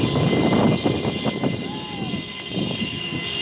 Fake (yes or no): no